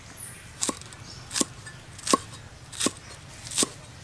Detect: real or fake real